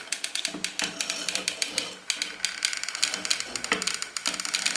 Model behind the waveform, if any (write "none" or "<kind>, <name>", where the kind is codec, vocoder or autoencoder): none